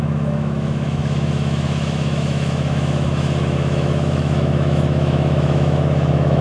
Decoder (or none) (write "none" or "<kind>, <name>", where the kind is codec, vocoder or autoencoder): autoencoder, DAC-VAE